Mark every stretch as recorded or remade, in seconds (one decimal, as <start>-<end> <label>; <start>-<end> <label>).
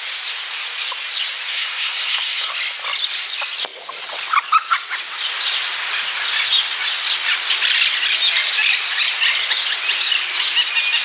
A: 0.0-1.5 recorded; 1.5-2.5 remade; 2.5-11.0 recorded